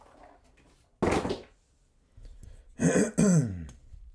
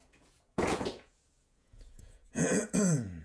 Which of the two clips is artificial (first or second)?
second